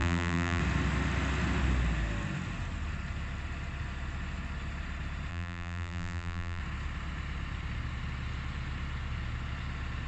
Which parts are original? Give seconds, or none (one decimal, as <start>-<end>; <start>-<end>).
0.6-5.3; 6.6-10.1